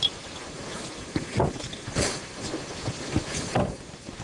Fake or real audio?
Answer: real